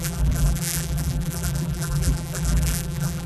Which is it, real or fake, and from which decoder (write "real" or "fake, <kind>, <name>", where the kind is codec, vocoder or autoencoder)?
fake, vocoder, BigVGAN v2